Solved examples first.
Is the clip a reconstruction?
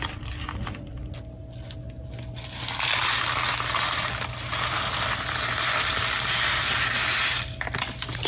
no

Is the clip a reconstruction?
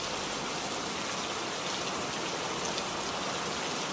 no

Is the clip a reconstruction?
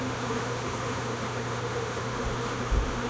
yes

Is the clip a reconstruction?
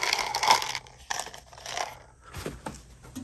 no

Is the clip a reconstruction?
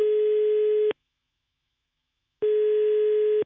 yes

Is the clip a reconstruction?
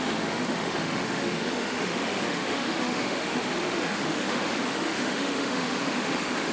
yes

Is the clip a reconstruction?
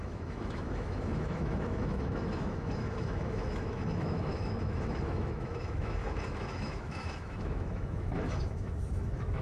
yes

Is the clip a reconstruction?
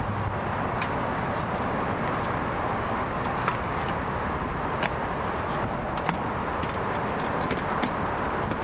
no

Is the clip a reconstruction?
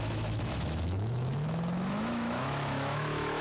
yes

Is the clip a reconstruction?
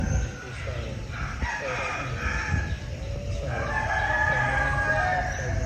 no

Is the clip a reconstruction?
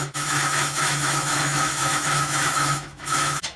yes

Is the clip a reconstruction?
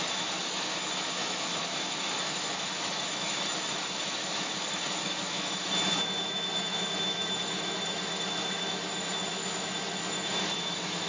yes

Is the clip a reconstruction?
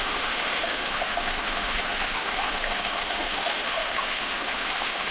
yes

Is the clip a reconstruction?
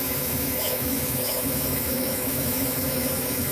yes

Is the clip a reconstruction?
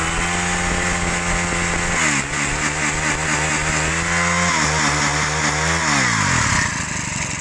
no